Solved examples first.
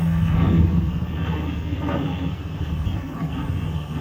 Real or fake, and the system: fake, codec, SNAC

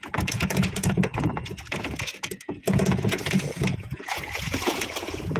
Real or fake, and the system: fake, vocoder, Vocos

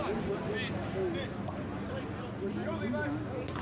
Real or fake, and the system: real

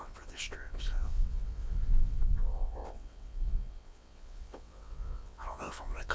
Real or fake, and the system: fake, vocoder, WaveNeXt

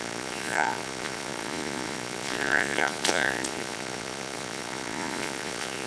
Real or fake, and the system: fake, vocoder, Vocos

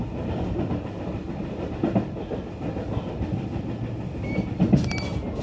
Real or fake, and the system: real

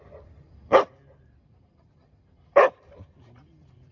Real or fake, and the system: fake, vocoder, BigVGAN v2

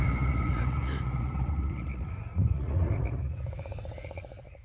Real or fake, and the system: fake, vocoder, Vocos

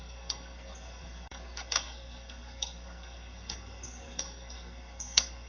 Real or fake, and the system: fake, codec, SNAC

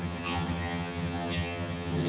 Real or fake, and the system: fake, vocoder, HiFi-GAN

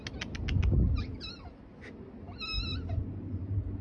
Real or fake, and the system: real